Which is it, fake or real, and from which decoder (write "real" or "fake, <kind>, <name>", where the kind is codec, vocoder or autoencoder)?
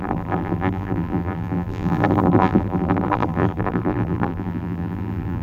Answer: fake, vocoder, BigVGAN v2